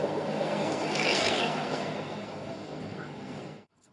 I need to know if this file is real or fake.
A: fake